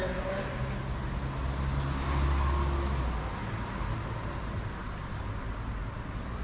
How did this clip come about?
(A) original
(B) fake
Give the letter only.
A